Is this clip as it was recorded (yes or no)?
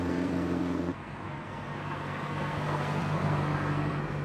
no